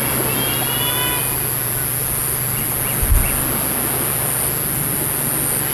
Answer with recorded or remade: recorded